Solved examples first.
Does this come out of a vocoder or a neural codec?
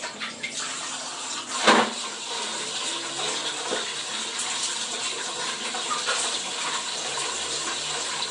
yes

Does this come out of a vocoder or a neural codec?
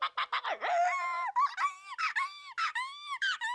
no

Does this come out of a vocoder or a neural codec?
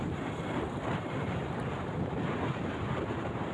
yes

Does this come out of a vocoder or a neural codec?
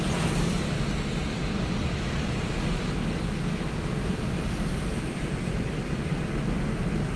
no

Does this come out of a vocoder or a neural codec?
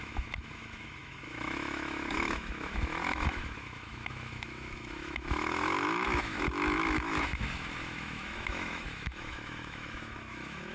yes